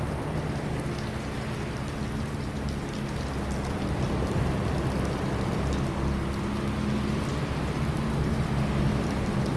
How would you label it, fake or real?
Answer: real